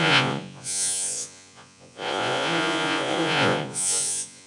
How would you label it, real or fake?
fake